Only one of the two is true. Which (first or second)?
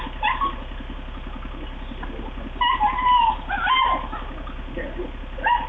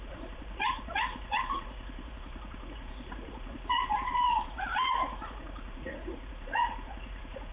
first